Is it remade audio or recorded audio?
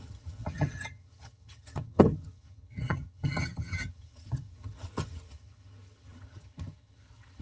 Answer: remade